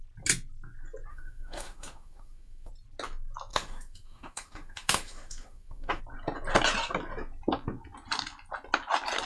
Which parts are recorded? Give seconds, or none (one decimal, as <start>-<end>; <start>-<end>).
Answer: 0.0-1.1; 2.7-3.5; 6.0-9.3